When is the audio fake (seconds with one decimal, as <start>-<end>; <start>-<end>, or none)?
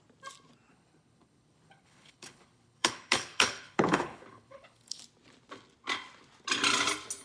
0.7-5.0